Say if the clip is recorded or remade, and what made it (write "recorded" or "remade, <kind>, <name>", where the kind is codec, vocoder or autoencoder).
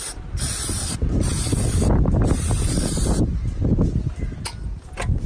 recorded